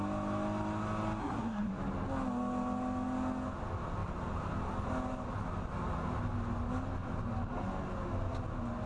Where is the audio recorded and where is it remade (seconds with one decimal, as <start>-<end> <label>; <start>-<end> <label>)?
0.0-1.2 recorded; 1.2-1.7 remade; 1.7-8.9 recorded